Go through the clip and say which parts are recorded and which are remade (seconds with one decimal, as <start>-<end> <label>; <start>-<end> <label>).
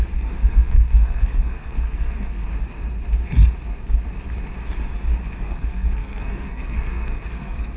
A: 0.0-2.4 remade; 2.4-5.4 recorded; 5.4-7.8 remade